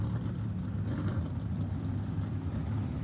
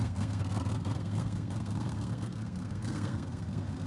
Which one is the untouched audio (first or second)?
first